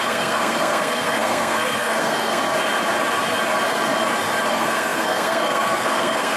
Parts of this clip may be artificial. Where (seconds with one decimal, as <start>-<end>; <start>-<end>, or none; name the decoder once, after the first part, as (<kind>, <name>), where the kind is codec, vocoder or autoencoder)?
0.0-2.4 (codec, SNAC); 4.5-6.4